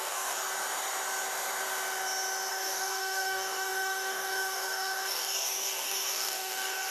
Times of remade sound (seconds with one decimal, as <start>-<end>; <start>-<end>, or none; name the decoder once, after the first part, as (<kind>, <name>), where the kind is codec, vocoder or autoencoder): 0.0-0.4 (codec, DAC); 2.5-6.9